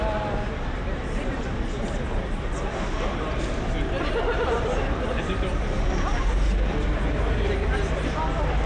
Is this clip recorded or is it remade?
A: recorded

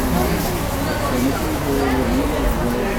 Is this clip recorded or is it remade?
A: recorded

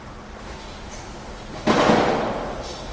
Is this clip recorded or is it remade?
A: recorded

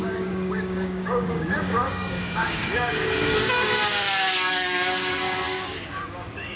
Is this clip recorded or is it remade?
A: remade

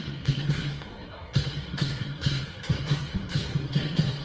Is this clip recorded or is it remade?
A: remade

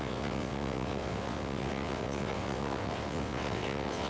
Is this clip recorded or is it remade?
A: remade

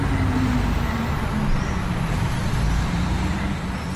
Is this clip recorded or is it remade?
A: recorded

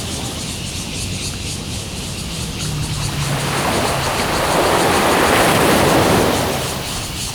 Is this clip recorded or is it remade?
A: recorded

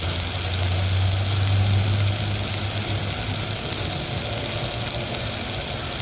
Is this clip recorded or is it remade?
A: recorded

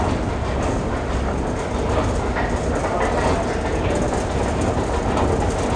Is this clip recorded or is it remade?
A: recorded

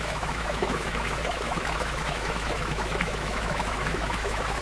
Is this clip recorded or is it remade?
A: remade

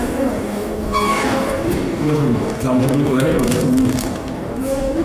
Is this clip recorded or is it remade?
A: remade